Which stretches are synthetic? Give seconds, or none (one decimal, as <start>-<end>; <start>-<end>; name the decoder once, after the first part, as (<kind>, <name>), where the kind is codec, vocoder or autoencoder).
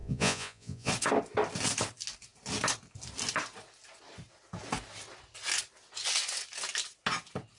0.0-0.9 (vocoder, Vocos)